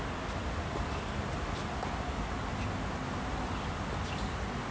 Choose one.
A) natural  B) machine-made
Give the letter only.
A